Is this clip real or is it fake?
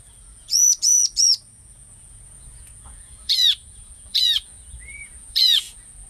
fake